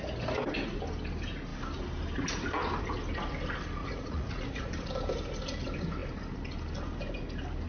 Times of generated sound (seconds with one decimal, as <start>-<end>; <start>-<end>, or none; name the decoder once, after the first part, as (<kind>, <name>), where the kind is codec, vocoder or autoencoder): 3.8-4.7 (vocoder, Vocos)